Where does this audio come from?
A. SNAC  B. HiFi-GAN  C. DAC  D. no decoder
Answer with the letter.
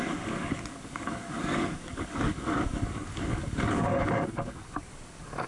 C